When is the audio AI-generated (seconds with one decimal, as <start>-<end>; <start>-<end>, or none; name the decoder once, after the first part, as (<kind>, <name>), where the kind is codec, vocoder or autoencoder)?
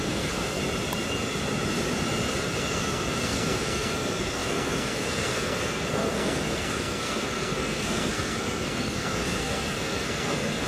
0.0-0.6 (codec, SNAC); 2.6-10.7